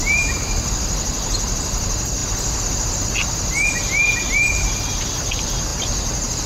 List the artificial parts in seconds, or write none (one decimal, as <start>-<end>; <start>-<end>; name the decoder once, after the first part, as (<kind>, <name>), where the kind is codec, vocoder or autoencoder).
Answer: 0.0-0.7 (vocoder, BigVGAN v2)